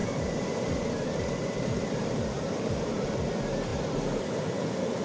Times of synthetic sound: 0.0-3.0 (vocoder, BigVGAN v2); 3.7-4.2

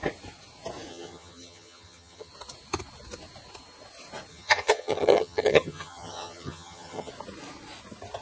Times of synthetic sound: 0.9-2.3 (vocoder, HiFi-GAN); 4.3-7.1

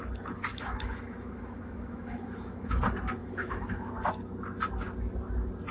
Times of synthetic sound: 0.5-2.8 (autoencoder, DAC-VAE); 3.2-3.9

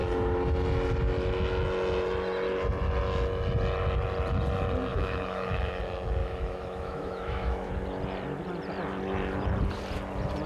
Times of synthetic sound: 4.9-5.8 (autoencoder, DAC-VAE); 6.2-7.7

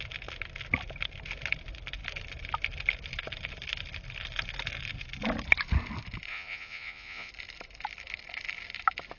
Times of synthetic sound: 6.3-7.3 (vocoder, Vocos)

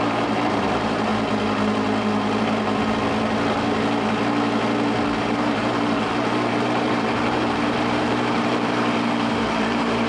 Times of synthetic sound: 0.0-1.1 (vocoder, BigVGAN v2); 5.2-10.1